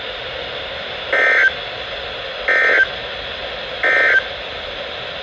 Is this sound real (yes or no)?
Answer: yes